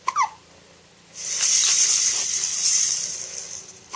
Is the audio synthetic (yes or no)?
yes